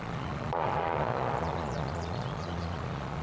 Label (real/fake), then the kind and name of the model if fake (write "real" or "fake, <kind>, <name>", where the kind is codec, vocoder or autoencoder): fake, vocoder, Vocos